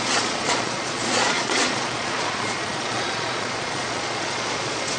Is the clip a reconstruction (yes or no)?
yes